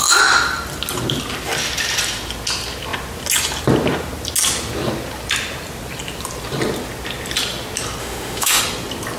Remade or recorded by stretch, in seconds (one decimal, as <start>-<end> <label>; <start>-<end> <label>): 0.0-8.0 recorded; 8.0-8.6 remade; 8.6-9.2 recorded

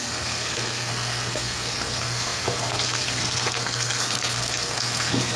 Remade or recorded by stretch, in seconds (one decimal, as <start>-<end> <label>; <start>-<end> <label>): 0.0-5.4 remade

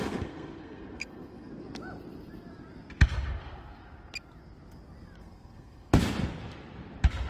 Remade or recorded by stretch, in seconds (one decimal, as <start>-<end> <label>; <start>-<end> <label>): 0.0-1.5 remade; 1.5-5.2 recorded; 5.2-5.9 remade; 5.9-7.3 recorded

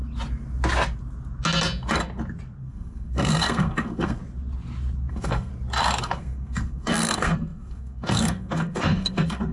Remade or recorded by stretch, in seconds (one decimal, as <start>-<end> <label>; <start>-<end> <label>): 0.0-2.6 recorded; 2.6-4.2 remade; 4.2-5.1 recorded; 5.1-5.5 remade; 5.5-6.0 recorded; 6.0-9.5 remade